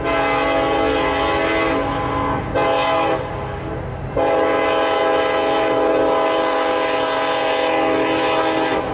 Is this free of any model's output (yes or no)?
yes